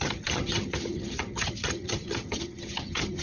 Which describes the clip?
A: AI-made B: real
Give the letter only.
A